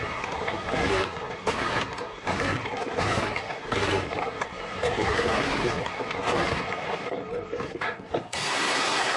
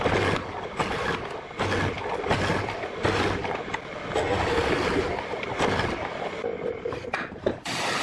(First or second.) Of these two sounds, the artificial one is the first